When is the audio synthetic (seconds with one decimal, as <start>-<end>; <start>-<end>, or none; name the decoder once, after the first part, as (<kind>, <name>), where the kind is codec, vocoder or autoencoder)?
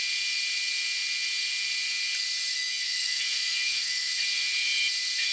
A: 2.5-4.1 (codec, SNAC)